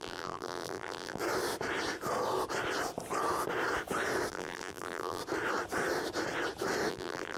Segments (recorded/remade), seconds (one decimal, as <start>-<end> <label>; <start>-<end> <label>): 0.0-1.2 remade; 1.2-4.3 recorded; 4.3-5.2 remade; 5.2-6.9 recorded; 6.9-7.4 remade